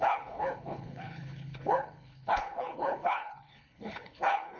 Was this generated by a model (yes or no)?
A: yes